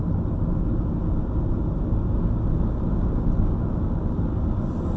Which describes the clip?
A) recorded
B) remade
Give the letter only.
A